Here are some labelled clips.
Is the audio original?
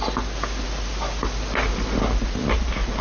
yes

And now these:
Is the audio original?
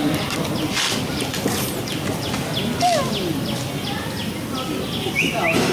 yes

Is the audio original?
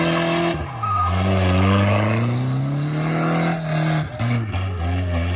yes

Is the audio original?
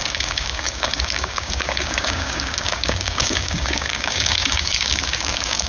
no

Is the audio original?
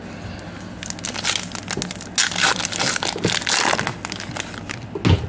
yes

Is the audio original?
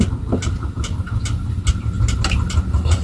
yes